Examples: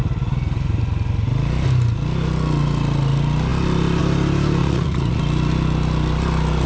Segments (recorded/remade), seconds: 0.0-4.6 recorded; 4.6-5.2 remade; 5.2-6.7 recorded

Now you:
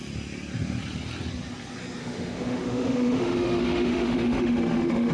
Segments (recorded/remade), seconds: 0.0-2.0 recorded; 2.0-5.1 remade

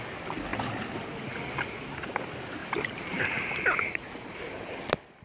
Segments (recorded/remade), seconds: 0.0-2.6 recorded; 2.6-4.3 remade; 4.3-5.2 recorded